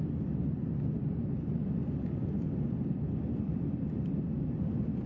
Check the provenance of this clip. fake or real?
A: real